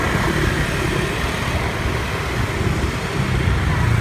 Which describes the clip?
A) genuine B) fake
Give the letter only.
A